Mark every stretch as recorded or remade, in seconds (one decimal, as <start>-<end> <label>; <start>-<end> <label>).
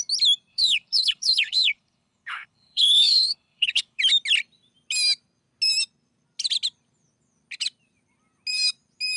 0.0-0.5 recorded; 0.5-4.0 remade; 4.0-9.2 recorded